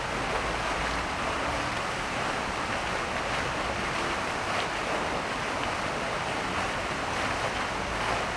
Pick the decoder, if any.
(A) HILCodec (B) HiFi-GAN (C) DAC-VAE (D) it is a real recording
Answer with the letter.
D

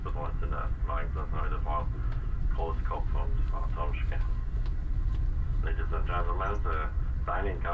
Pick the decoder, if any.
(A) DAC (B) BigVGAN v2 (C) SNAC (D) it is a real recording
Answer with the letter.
D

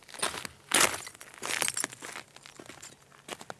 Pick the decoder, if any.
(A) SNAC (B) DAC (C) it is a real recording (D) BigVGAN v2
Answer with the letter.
C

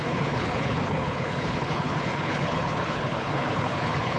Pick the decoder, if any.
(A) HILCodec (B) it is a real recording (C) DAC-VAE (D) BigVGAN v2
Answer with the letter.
A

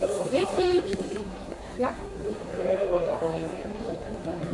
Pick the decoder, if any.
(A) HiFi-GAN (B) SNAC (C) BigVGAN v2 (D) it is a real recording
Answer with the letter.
B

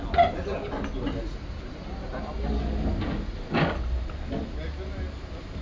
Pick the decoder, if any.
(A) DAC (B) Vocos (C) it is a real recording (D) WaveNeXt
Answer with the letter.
C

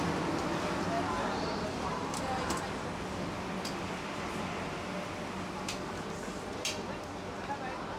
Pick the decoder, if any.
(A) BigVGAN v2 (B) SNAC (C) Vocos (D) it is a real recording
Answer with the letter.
D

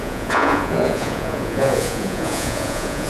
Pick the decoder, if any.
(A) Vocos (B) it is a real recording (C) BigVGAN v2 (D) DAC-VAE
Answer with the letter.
A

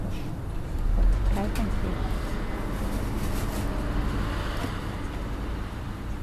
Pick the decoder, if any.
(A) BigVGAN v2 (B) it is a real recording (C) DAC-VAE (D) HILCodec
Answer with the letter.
B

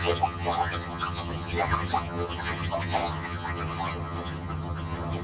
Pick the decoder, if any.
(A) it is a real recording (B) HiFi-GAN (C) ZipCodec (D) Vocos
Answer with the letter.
B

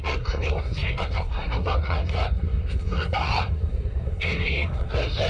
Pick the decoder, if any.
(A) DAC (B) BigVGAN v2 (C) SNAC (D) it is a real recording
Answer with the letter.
C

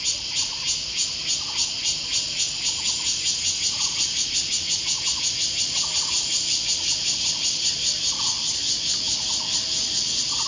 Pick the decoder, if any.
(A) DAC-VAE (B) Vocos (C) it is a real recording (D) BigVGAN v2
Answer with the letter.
C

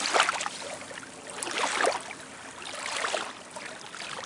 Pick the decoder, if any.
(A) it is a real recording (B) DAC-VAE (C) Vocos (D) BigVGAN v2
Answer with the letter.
A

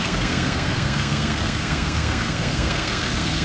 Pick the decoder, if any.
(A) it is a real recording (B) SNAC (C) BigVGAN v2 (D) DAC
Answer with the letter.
B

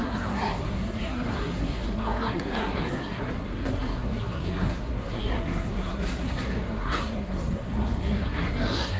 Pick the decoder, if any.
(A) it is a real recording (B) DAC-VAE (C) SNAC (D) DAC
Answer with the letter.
C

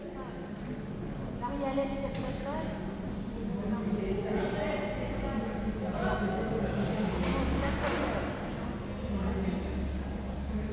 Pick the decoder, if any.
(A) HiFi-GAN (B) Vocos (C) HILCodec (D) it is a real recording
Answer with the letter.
D